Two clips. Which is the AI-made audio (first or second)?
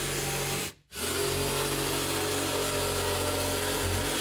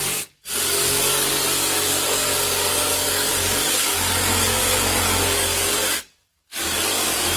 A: second